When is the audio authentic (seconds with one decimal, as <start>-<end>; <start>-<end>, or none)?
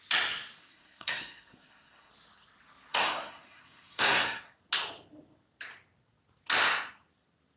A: 0.0-0.6; 2.1-2.9; 4.6-7.6